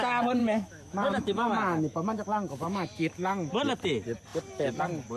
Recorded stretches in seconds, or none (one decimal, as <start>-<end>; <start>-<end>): 0.0-0.4; 3.5-5.2